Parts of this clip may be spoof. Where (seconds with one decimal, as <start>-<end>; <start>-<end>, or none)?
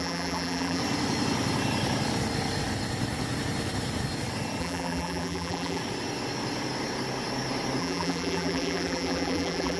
0.0-0.8; 4.6-5.8; 7.8-9.8